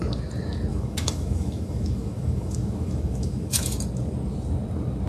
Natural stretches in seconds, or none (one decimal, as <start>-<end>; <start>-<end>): 0.0-0.7; 3.8-5.1